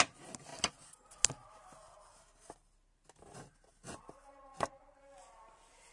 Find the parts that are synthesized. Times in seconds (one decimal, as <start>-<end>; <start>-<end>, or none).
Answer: none